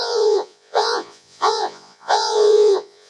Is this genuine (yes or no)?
no